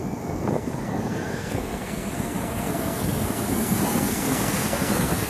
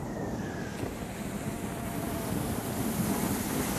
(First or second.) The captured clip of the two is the second